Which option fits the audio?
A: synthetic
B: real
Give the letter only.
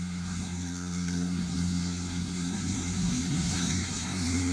A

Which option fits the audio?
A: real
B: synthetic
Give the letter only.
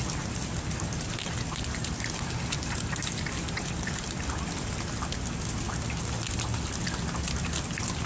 A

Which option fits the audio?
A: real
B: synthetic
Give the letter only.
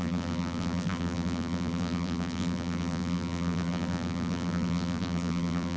B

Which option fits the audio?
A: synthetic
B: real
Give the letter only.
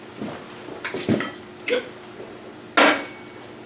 B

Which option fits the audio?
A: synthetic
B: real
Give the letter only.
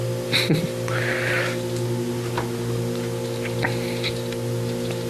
B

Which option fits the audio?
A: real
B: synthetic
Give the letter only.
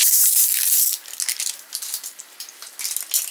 A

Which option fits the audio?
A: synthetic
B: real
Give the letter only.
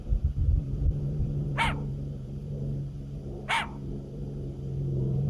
A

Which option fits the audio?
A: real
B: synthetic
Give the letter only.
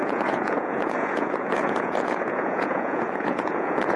B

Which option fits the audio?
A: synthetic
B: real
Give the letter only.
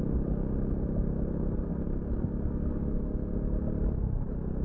B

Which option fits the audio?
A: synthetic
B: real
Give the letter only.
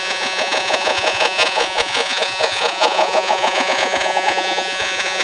A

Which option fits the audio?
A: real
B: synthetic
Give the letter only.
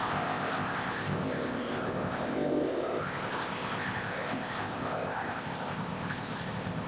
B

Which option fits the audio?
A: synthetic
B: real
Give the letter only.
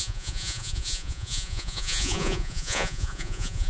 A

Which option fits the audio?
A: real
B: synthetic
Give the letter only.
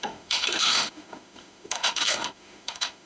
B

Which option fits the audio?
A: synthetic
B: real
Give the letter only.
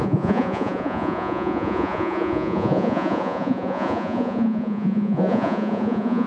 A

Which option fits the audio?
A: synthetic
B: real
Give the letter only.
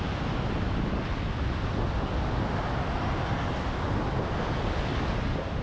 B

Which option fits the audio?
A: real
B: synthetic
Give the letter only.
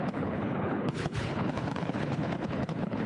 B